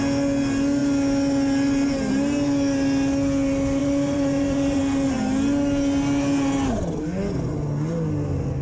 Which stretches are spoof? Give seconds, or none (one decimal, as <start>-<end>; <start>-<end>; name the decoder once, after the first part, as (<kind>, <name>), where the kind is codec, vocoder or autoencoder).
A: 3.8-4.8 (vocoder, Vocos)